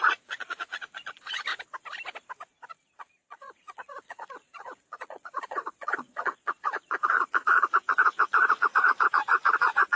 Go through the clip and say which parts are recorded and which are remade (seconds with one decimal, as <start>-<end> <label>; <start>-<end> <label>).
0.0-1.5 remade; 1.5-2.7 recorded; 2.7-10.0 remade